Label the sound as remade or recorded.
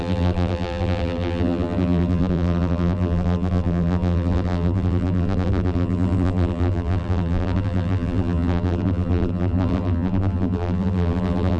remade